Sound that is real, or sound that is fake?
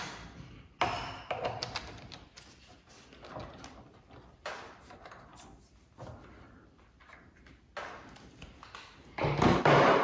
real